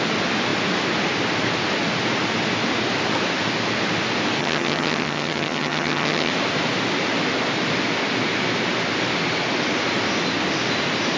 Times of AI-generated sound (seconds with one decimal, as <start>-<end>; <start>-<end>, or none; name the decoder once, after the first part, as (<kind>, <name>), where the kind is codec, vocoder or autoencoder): 4.4-6.3 (vocoder, HiFi-GAN)